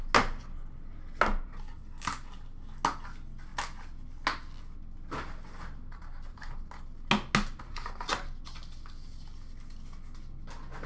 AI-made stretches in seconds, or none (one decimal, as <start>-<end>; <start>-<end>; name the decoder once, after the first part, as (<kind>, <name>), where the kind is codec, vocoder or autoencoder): none